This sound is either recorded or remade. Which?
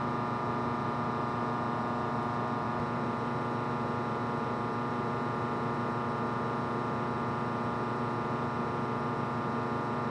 recorded